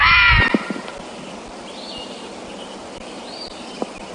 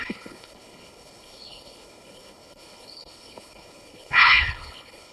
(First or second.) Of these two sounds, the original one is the first